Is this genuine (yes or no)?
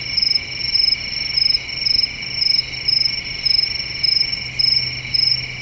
yes